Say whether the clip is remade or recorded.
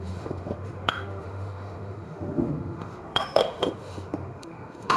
remade